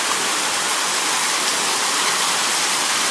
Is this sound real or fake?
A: real